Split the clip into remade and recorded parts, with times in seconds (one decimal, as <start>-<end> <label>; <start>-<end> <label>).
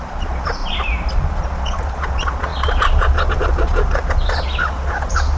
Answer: 0.0-0.6 remade; 0.6-1.1 recorded; 1.1-5.4 remade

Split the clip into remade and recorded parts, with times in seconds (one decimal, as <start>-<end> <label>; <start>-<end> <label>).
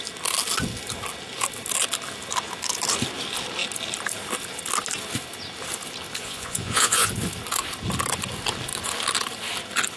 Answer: 0.0-6.2 recorded; 6.2-7.1 remade; 7.1-10.0 recorded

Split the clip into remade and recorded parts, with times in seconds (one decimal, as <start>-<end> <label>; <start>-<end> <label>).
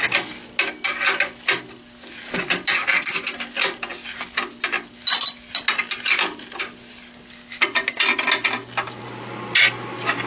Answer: 0.0-10.3 recorded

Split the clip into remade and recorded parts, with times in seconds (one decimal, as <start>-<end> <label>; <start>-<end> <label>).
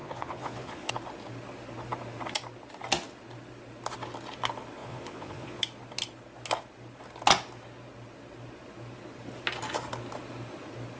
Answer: 0.0-0.9 remade; 0.9-4.8 recorded; 4.8-5.6 remade; 5.6-11.0 recorded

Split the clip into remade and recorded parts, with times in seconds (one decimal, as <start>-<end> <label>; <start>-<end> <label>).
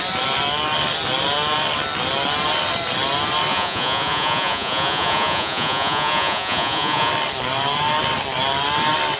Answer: 0.0-3.5 recorded; 3.5-7.1 remade; 7.1-9.2 recorded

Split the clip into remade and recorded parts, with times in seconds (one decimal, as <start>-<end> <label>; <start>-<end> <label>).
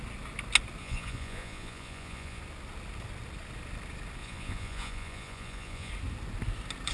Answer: 0.0-0.8 recorded; 0.8-2.4 remade; 2.4-4.2 recorded; 4.2-5.9 remade; 5.9-6.9 recorded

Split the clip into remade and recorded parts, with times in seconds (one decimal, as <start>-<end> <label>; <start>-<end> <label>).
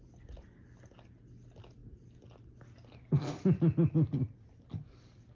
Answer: 0.0-5.3 recorded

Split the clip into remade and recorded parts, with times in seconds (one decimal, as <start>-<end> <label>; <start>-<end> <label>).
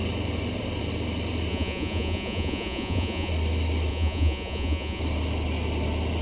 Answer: 0.0-1.5 recorded; 1.5-3.3 remade; 3.3-3.9 recorded; 3.9-5.0 remade; 5.0-6.2 recorded